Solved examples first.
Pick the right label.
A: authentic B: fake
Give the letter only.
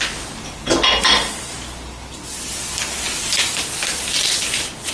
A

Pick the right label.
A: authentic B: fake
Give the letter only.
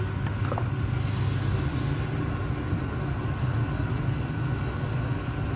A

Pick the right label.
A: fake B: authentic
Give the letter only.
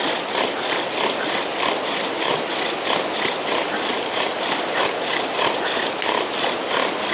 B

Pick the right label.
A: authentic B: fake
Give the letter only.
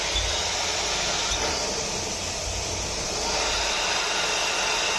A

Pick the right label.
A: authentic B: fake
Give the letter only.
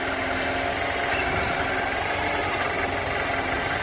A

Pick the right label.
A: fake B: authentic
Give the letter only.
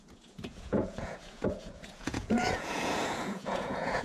A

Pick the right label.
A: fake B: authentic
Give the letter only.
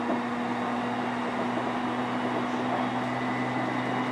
B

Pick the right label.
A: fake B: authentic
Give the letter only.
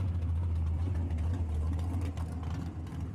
B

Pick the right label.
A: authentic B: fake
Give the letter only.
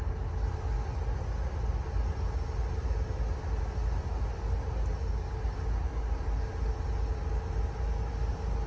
A